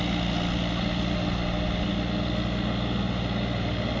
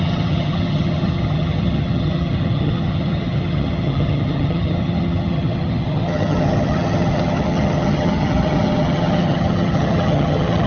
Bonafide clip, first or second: first